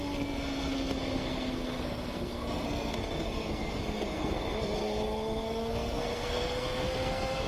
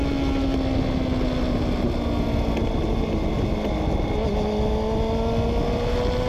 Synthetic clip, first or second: first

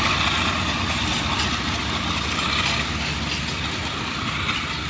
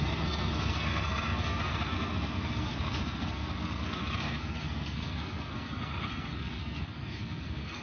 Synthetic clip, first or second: second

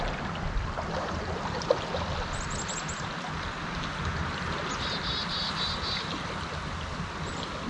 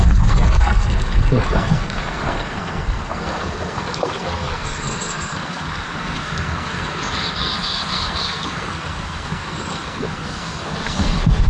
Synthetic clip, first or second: second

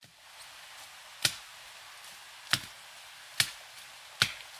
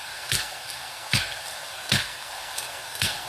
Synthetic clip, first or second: second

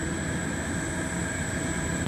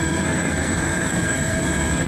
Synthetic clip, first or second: second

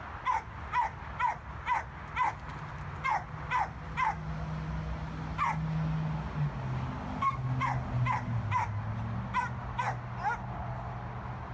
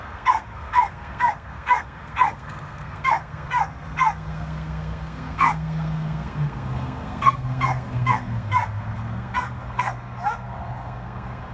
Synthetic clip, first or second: second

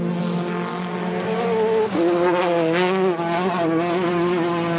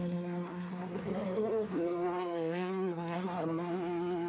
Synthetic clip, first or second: second